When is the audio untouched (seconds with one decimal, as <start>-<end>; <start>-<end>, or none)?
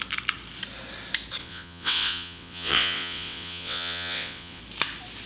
0.0-1.4; 4.6-5.3